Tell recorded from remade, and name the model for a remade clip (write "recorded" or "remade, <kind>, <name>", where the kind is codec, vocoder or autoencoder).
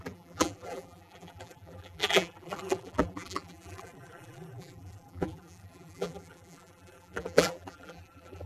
remade, vocoder, BigVGAN v2